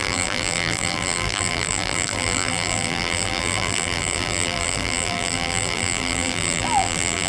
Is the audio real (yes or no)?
no